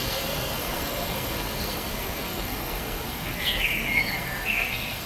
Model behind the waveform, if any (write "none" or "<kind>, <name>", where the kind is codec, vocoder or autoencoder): codec, SNAC